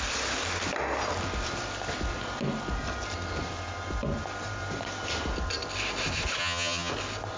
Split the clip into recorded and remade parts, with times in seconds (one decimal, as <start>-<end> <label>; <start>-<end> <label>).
0.0-6.4 recorded; 6.4-6.9 remade; 6.9-7.4 recorded